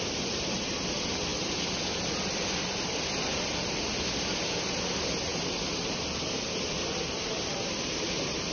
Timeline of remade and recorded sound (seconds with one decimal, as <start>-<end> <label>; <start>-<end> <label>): 0.0-8.5 recorded